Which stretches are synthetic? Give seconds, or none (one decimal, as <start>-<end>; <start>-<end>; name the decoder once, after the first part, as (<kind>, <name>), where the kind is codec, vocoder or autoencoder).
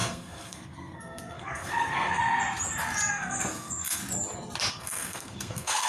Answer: 0.0-2.2 (codec, SNAC); 3.1-4.0; 4.7-5.9